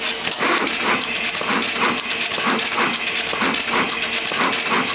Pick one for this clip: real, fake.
real